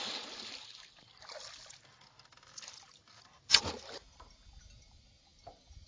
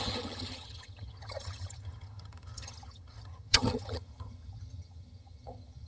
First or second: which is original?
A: first